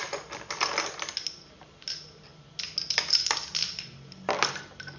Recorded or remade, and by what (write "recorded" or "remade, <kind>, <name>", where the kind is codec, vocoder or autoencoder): recorded